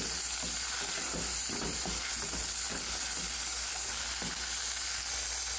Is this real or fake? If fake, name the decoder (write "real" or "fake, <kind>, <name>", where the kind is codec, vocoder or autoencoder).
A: real